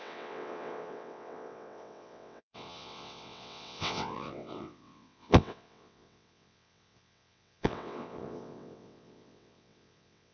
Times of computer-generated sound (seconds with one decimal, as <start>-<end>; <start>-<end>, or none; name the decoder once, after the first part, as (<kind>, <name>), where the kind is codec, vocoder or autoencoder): 0.0-10.3 (vocoder, WaveNeXt)